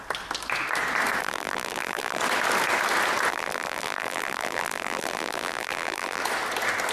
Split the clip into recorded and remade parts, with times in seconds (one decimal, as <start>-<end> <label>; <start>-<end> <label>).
0.0-1.2 recorded; 1.2-2.2 remade; 2.2-3.3 recorded; 3.3-6.2 remade; 6.2-6.9 recorded